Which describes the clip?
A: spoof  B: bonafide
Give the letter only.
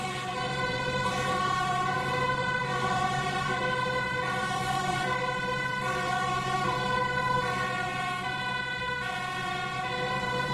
A